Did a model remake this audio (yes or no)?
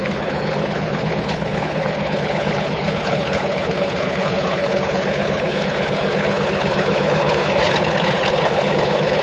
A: yes